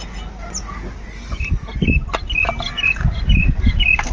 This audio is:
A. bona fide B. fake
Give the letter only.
A